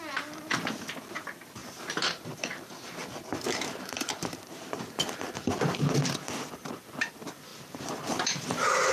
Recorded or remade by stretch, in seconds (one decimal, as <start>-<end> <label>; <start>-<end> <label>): 0.0-1.6 recorded; 1.6-5.5 remade; 5.5-7.5 recorded; 7.5-8.9 remade